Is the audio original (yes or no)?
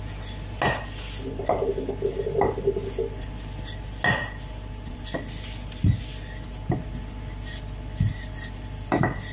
yes